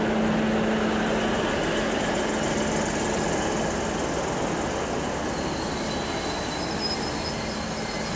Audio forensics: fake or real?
real